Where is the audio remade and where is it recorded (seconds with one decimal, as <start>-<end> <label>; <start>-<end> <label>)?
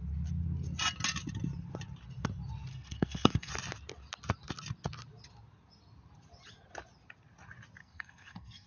0.0-2.7 recorded; 2.7-3.5 remade; 3.5-7.8 recorded; 7.8-8.7 remade